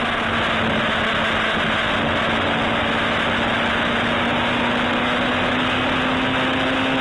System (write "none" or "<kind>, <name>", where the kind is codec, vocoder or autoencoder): none